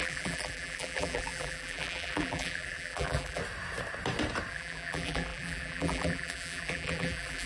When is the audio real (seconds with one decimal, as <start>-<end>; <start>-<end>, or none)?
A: 3.4-4.5